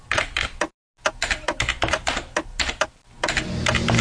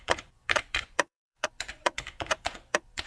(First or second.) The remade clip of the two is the second